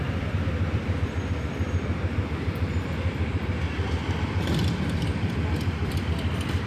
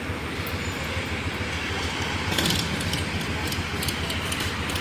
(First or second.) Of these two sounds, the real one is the second